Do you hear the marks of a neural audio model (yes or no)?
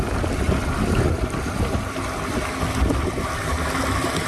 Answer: no